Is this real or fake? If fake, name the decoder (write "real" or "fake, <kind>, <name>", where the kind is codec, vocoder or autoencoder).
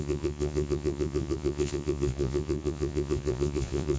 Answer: fake, vocoder, Vocos